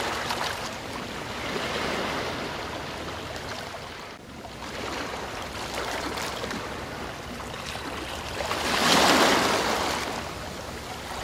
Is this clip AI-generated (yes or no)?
no